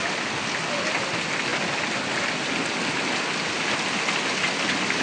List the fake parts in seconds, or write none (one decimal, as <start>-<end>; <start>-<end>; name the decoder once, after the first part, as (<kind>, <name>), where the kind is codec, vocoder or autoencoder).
none